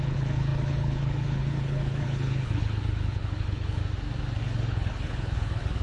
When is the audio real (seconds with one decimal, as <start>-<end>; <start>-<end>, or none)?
3.8-4.4